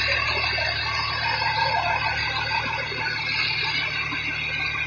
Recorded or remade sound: recorded